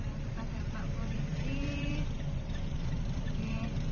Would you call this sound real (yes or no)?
no